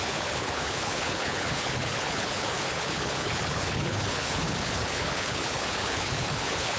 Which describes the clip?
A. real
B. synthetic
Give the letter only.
B